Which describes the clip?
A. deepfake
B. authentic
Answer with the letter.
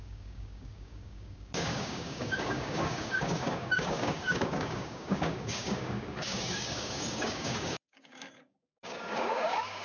A